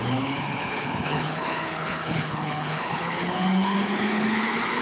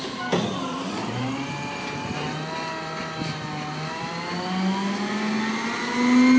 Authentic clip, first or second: second